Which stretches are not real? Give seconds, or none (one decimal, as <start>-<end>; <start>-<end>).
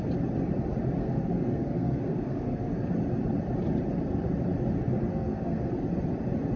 1.0-2.9; 5.1-5.7